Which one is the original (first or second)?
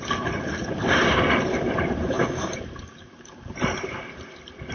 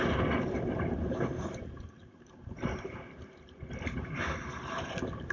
second